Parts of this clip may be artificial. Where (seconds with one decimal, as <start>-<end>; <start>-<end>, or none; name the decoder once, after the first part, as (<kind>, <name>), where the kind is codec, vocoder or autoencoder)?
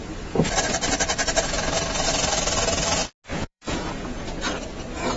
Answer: 3.3-4.4 (vocoder, Vocos)